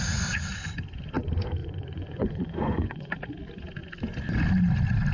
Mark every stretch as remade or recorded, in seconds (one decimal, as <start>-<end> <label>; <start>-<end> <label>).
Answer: 0.0-1.6 recorded; 1.6-3.1 remade; 3.1-5.1 recorded